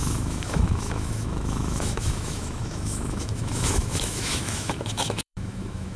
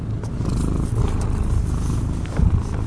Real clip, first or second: second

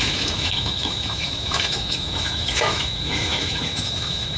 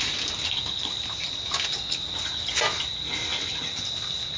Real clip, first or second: second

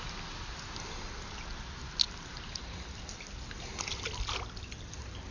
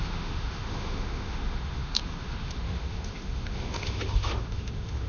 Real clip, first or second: first